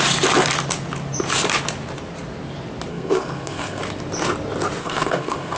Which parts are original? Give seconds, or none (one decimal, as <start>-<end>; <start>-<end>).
0.0-2.9; 3.8-4.8